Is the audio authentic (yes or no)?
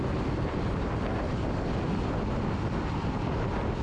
yes